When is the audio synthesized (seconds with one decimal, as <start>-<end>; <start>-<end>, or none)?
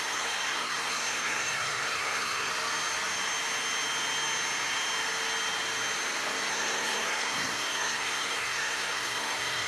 0.0-2.5; 6.5-9.7